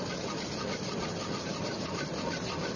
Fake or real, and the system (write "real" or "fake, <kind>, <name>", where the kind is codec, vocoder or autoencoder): real